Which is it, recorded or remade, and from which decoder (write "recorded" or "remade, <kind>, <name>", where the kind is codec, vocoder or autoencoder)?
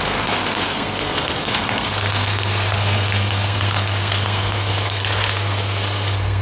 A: remade, codec, SNAC